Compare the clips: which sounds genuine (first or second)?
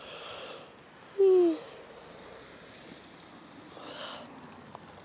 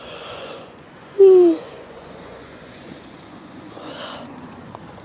first